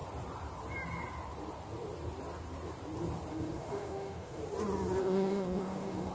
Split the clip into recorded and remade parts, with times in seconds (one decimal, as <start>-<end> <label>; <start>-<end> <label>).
0.0-3.3 recorded; 3.3-4.4 remade; 4.4-5.0 recorded; 5.0-6.1 remade